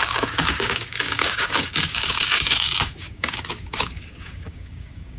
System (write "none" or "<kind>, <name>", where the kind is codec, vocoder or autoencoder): codec, DAC